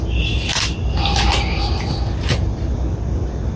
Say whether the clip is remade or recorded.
recorded